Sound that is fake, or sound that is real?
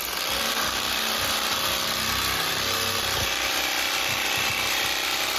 real